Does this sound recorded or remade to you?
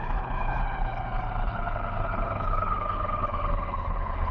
remade